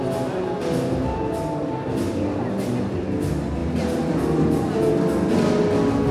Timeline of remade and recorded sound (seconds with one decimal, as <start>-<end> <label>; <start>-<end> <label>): 0.0-6.1 recorded